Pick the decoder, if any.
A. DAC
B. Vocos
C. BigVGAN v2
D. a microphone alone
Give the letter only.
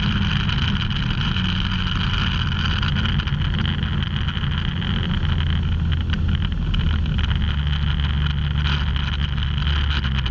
D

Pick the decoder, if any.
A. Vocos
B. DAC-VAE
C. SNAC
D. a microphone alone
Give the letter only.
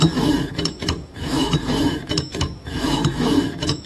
B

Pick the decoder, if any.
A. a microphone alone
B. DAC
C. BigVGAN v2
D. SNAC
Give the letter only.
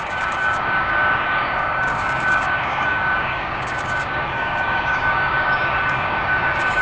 B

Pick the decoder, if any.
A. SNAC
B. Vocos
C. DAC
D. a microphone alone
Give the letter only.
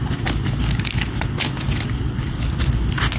D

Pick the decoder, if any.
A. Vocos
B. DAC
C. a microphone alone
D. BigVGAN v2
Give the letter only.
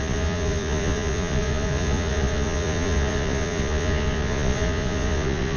A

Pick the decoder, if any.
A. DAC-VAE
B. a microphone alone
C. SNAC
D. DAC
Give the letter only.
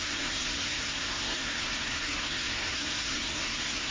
C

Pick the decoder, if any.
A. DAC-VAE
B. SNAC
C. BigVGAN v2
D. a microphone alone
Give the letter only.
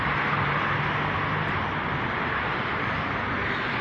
D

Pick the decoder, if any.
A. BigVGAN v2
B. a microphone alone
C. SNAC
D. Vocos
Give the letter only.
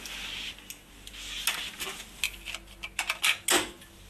B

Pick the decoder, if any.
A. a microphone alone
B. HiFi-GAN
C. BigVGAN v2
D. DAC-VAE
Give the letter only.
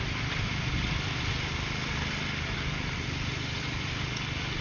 A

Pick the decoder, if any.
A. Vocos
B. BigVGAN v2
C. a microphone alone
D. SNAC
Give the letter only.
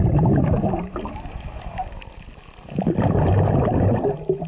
B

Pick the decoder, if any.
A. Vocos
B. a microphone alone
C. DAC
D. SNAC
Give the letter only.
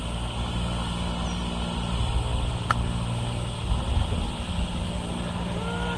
B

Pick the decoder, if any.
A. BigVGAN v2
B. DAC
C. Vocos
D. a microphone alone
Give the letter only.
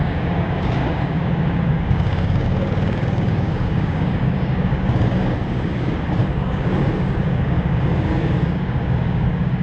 B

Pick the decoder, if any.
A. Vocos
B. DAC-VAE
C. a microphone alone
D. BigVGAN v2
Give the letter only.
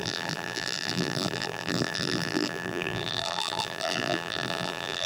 D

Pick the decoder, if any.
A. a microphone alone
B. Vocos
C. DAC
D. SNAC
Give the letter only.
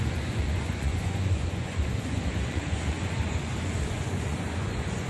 B